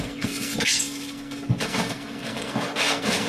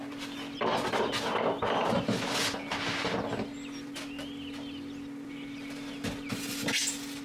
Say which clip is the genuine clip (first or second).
second